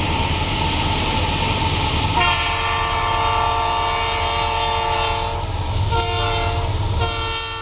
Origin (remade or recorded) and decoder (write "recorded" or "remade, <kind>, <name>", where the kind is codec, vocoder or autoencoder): recorded